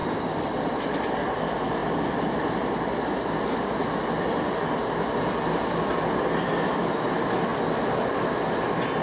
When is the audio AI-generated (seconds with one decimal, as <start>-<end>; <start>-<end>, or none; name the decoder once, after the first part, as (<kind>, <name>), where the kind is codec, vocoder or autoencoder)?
none